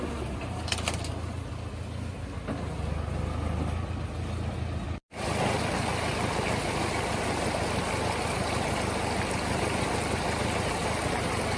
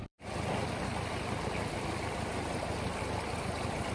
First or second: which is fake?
second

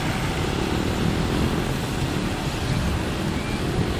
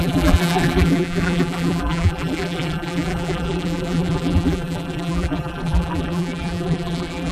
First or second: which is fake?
second